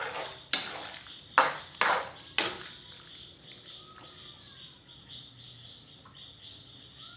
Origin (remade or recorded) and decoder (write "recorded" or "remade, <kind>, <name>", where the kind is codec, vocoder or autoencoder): recorded